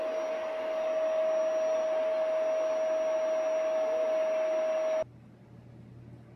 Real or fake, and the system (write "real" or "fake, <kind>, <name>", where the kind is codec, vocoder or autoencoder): real